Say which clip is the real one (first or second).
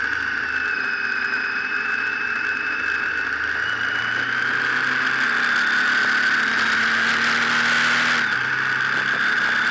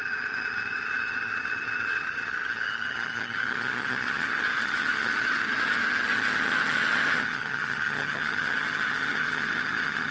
first